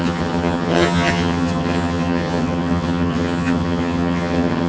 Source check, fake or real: fake